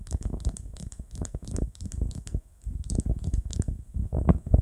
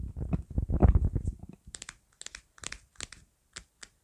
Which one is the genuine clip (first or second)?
second